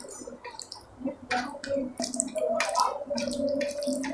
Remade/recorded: recorded